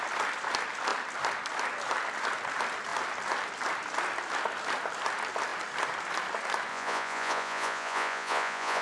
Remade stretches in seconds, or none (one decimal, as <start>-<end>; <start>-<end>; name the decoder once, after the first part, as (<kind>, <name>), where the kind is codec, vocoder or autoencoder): 6.7-8.8 (vocoder, Vocos)